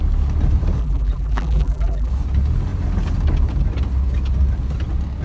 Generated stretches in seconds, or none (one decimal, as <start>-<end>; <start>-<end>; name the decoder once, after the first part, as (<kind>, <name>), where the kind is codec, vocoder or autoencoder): 0.8-2.1 (vocoder, BigVGAN v2)